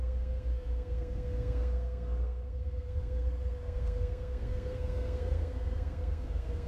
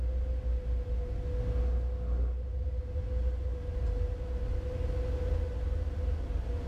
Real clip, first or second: second